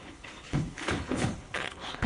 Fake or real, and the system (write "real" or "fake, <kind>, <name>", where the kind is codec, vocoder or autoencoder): fake, codec, HILCodec